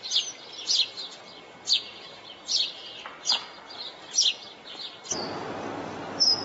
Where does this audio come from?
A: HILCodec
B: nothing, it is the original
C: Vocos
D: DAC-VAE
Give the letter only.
B